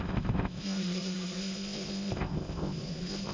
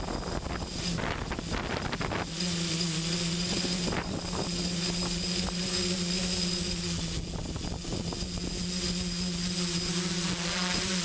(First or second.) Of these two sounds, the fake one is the first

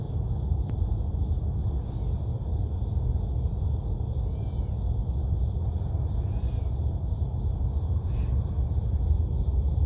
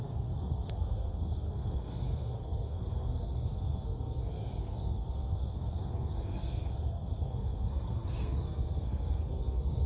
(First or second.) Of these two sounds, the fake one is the second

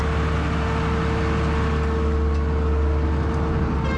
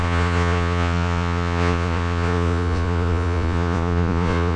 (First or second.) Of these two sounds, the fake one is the second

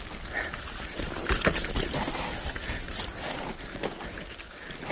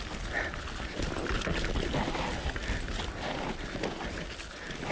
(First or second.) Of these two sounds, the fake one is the first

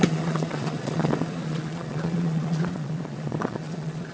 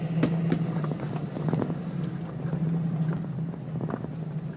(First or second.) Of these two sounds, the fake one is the first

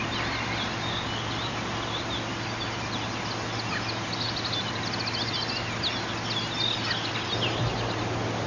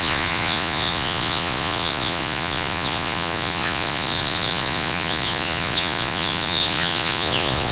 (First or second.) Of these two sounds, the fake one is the second